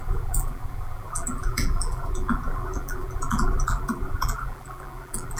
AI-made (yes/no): yes